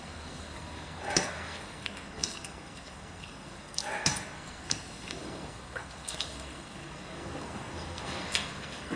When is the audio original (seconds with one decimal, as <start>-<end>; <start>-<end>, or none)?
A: none